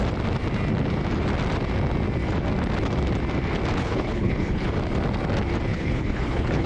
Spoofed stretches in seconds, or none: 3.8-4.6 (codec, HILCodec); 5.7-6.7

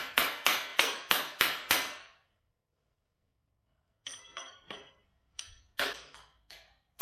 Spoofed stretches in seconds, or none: 0.0-7.0 (codec, SNAC)

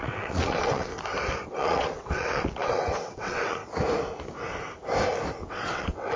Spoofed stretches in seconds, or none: 0.0-0.9 (vocoder, WaveNeXt); 1.5-3.6; 5.5-6.2